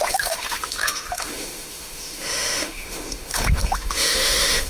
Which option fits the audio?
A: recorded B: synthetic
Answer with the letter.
B